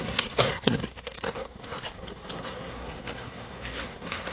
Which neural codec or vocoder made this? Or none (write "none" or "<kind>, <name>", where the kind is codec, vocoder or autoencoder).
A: codec, SNAC